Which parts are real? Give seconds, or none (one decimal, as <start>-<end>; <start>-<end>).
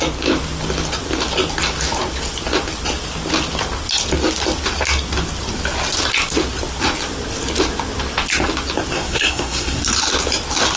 0.0-8.9; 9.8-10.8